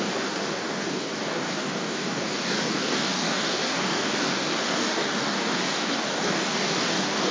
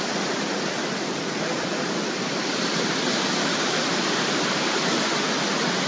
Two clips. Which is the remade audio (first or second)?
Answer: first